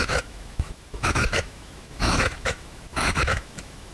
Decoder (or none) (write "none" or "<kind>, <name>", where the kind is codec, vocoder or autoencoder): autoencoder, DAC-VAE